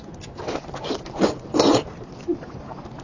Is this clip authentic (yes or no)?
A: yes